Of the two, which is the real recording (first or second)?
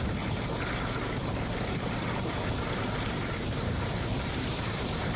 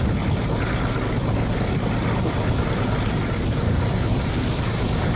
second